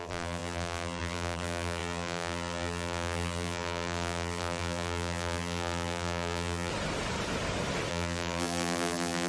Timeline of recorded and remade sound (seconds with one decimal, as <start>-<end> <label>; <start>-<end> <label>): 0.0-6.7 remade; 6.7-7.9 recorded; 7.9-9.3 remade